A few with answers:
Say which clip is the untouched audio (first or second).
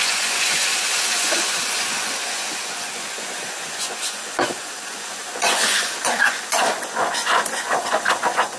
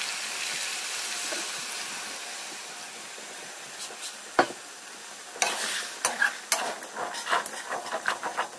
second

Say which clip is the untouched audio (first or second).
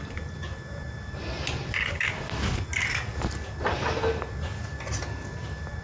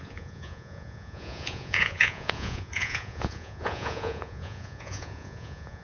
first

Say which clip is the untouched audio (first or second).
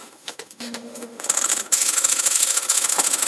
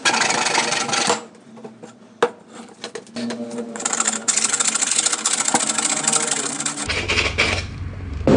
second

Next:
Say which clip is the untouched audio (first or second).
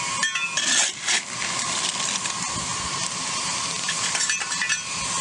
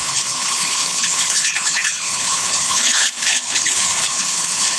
first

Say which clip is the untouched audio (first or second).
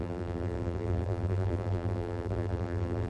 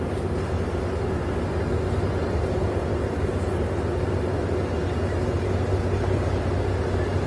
second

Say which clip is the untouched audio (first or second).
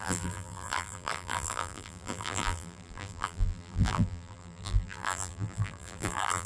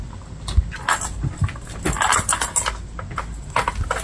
second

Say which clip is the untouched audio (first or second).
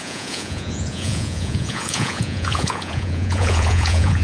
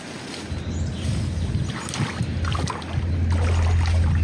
second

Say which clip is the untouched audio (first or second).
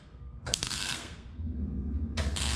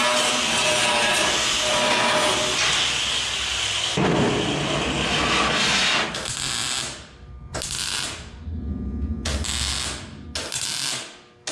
second